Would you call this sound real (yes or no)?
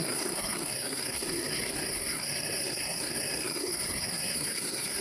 no